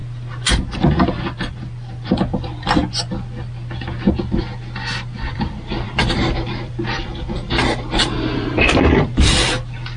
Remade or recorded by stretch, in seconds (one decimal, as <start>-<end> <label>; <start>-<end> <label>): 0.0-1.5 recorded; 1.5-2.8 remade; 2.8-5.3 recorded; 5.3-10.0 remade